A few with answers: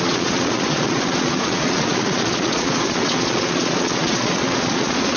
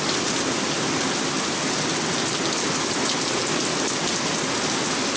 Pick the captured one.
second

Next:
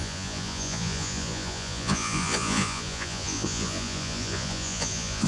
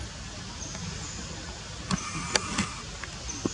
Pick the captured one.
second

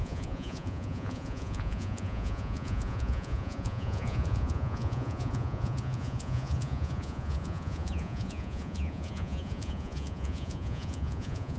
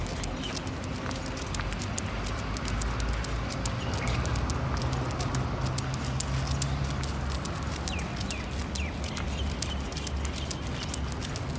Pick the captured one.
second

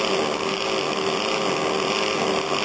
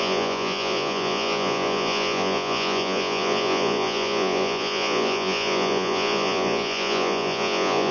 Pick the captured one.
first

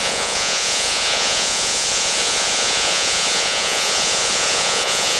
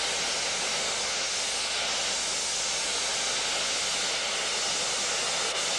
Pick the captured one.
second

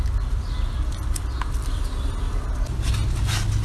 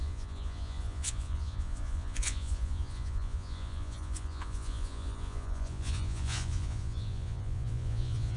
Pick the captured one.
first